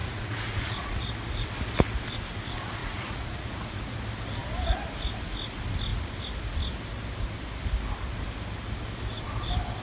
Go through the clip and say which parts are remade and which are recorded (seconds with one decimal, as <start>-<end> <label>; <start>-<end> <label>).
0.0-1.0 remade; 1.0-2.8 recorded; 2.8-4.0 remade; 4.0-9.8 recorded